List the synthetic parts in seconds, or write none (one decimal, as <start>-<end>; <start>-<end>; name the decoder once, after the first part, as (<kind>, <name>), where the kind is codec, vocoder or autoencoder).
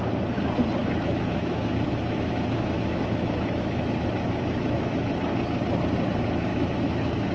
0.8-5.2 (autoencoder, DAC-VAE); 6.5-7.3